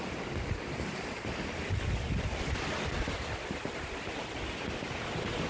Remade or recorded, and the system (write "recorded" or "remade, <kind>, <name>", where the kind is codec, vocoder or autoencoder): recorded